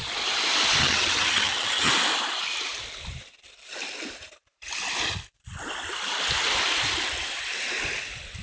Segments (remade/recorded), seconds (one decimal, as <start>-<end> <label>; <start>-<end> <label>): 0.0-0.8 recorded; 0.8-1.9 remade; 1.9-8.4 recorded